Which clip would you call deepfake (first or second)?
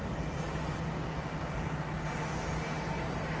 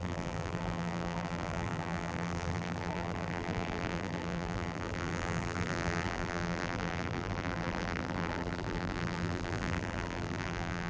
second